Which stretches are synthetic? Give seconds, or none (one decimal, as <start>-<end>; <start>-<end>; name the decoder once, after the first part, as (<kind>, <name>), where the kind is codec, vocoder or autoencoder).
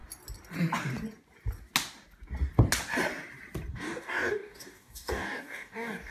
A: 3.7-6.1 (codec, DAC)